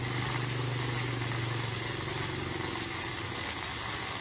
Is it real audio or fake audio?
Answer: real